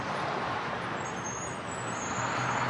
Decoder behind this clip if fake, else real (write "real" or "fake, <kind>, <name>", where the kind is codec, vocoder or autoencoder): real